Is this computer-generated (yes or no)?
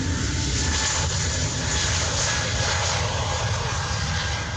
no